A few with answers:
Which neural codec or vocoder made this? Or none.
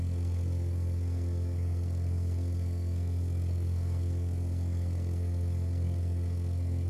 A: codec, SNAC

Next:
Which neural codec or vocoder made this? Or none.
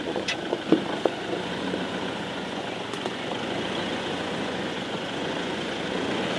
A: vocoder, Vocos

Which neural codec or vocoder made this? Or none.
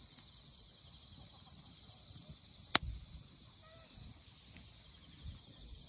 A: none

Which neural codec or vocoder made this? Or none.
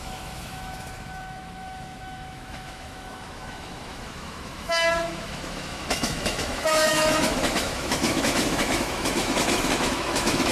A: autoencoder, DAC-VAE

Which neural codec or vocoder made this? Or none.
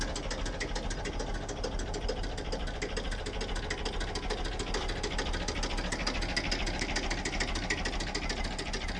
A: none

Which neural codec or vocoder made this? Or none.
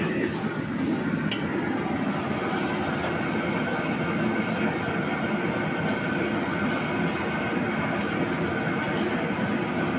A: none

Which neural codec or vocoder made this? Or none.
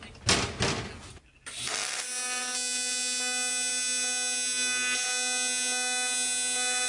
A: none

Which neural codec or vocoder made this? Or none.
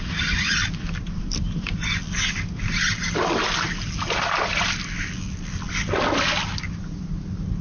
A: none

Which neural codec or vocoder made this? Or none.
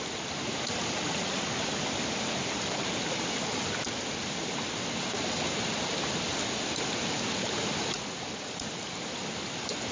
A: none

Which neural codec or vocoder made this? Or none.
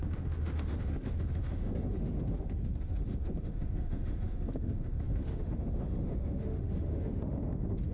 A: autoencoder, DAC-VAE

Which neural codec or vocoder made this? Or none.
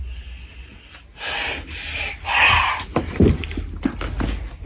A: none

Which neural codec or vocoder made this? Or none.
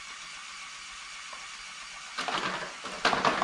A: none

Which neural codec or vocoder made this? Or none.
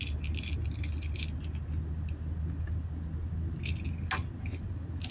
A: none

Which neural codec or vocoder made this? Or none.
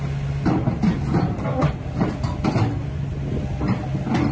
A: none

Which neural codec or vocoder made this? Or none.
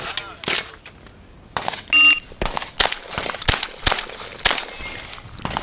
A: none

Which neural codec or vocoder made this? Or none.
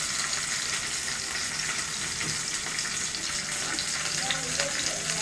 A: none